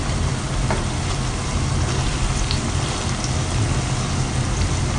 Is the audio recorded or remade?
recorded